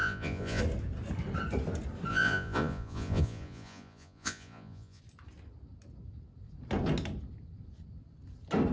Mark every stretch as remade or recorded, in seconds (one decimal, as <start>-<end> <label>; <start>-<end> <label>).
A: 0.0-0.6 remade; 0.6-2.1 recorded; 2.1-5.0 remade; 5.0-8.7 recorded